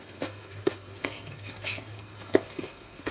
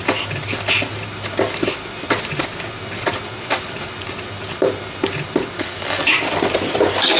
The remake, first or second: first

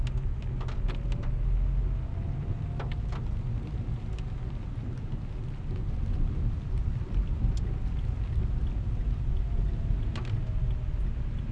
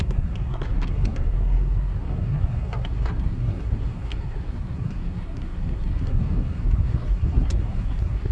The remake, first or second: second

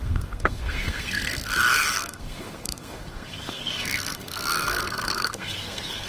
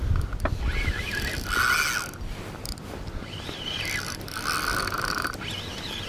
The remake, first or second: first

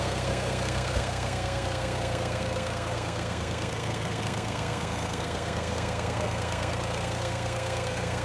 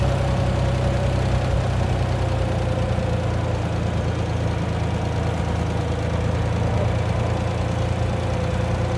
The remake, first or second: first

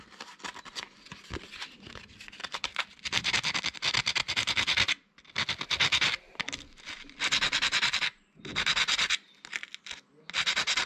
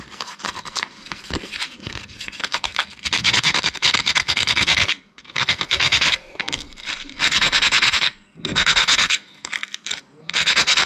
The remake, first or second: second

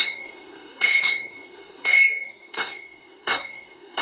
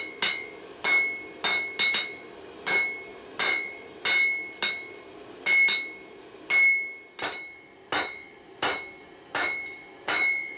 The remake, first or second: first